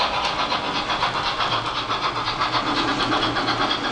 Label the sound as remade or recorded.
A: recorded